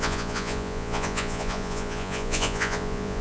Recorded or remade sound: remade